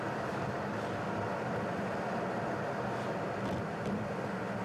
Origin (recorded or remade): recorded